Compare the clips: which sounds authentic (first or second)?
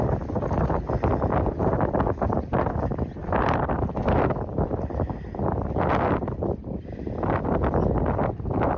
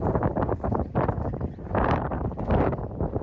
first